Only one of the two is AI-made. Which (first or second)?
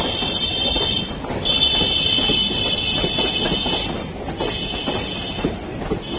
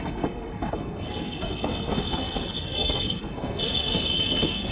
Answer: second